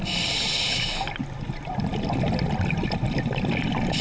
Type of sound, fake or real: real